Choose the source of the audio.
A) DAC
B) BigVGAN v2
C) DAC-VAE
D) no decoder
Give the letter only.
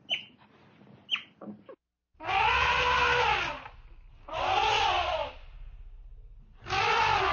D